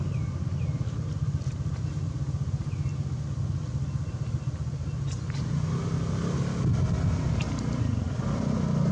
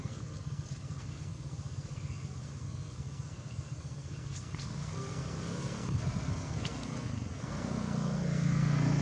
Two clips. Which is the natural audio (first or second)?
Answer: first